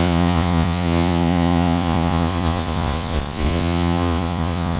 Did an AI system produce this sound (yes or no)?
yes